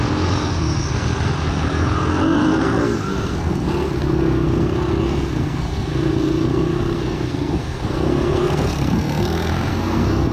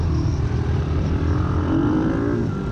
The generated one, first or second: first